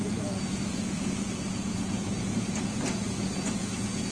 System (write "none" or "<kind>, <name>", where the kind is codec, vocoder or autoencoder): vocoder, Vocos